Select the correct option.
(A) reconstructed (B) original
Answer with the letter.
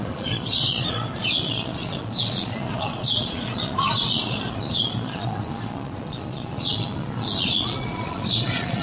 A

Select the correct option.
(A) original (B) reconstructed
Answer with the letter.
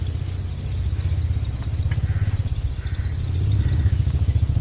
A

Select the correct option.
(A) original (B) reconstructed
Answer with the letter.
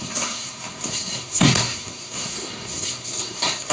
B